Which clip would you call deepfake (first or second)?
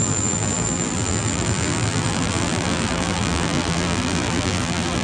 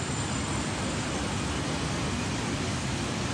first